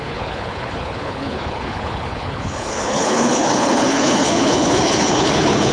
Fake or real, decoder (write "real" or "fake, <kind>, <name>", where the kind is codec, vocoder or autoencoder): fake, codec, HILCodec